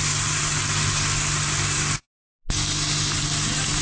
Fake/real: real